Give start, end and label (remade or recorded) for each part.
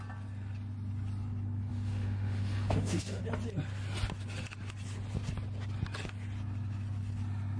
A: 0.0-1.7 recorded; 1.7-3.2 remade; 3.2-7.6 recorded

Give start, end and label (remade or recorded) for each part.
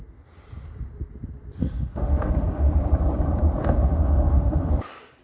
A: 0.0-1.6 recorded; 1.6-2.7 remade; 2.7-3.6 recorded; 3.6-4.7 remade; 4.7-5.2 recorded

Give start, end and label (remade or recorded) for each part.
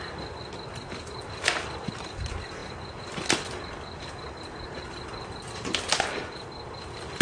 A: 0.0-7.2 recorded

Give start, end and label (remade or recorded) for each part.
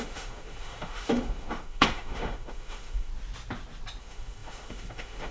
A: 0.0-3.1 remade; 3.1-4.0 recorded; 4.0-5.3 remade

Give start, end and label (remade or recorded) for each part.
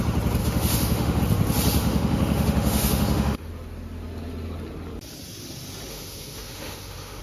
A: 0.0-0.4 recorded; 0.4-1.2 remade; 1.2-1.8 recorded; 1.8-3.5 remade; 3.5-5.9 recorded; 5.9-7.2 remade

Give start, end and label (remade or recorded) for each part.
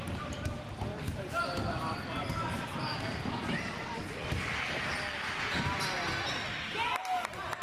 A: 0.0-7.6 recorded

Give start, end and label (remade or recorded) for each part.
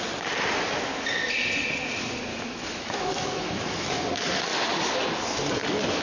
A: 0.0-2.3 recorded; 2.3-4.0 remade; 4.0-6.0 recorded